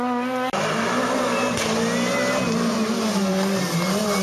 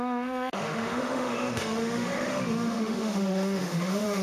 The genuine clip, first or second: first